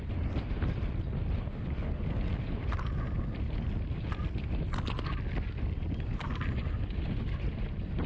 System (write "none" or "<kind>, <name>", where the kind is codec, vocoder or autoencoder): none